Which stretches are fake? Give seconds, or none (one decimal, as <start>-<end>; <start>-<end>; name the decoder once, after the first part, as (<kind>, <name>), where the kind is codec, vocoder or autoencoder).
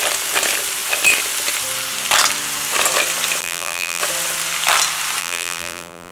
3.4-4.0 (vocoder, BigVGAN v2); 5.2-6.1